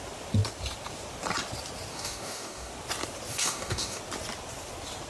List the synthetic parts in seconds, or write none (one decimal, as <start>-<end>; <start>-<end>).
1.9-2.7; 3.3-4.0